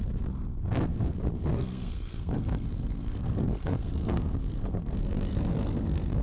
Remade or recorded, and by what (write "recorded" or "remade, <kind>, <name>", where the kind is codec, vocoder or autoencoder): remade, codec, SNAC